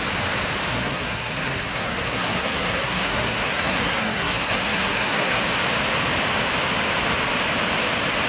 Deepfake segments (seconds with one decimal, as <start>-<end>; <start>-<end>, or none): 0.7-5.4